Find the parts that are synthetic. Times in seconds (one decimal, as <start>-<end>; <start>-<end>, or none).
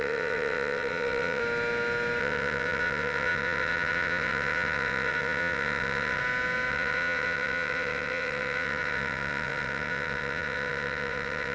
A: 0.0-1.4; 2.2-6.2; 6.7-11.5